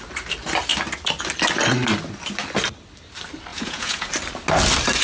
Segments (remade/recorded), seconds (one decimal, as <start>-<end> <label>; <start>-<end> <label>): 0.0-3.5 recorded; 3.5-4.1 remade; 4.1-5.0 recorded